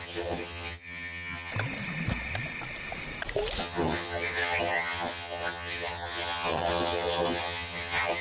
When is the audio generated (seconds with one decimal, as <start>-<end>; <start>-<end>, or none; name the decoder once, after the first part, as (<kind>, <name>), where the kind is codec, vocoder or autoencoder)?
0.0-1.5 (vocoder, HiFi-GAN); 3.6-8.2